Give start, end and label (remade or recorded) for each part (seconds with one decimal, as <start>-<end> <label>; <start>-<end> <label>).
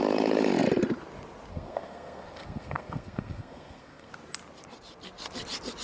0.0-1.5 recorded; 1.5-4.1 remade; 4.1-5.8 recorded